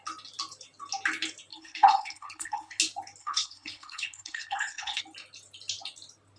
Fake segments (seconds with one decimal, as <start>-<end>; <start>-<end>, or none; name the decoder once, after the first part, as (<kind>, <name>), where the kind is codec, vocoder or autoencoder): 1.5-2.8 (codec, HILCodec); 3.2-5.0